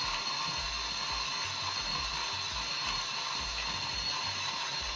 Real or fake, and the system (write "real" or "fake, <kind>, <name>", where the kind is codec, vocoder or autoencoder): real